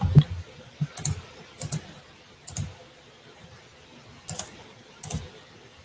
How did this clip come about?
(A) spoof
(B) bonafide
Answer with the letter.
B